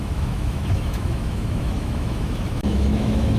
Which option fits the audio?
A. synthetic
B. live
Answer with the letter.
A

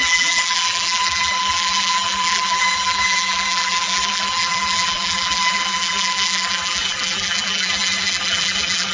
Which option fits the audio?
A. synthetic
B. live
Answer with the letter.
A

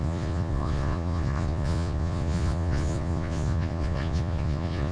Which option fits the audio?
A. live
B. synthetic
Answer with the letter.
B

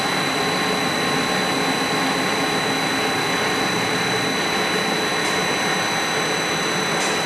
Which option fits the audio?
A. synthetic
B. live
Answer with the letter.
B